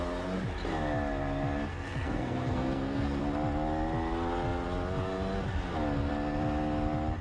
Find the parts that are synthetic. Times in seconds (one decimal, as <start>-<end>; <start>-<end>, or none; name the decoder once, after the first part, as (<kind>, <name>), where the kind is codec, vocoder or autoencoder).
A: 1.7-3.2 (codec, SNAC)